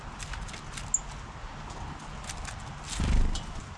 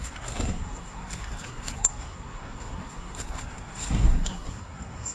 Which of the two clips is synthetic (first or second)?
second